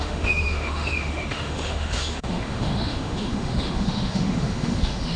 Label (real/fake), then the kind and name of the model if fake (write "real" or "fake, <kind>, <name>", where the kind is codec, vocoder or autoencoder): fake, autoencoder, DAC-VAE